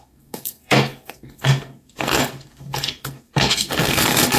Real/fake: fake